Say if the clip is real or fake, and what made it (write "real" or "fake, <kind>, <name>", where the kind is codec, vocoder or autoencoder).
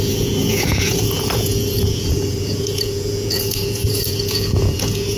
fake, vocoder, Vocos